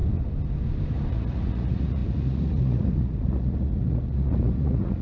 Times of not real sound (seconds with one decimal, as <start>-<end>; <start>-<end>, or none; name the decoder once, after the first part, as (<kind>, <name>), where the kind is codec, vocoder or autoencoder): 1.1-5.0 (vocoder, Vocos)